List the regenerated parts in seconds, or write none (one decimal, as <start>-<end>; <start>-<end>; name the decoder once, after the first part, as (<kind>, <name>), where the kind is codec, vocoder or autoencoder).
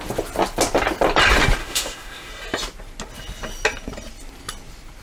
1.6-2.3 (autoencoder, DAC-VAE)